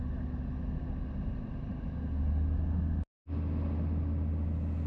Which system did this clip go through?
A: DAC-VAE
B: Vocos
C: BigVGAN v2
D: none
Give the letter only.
D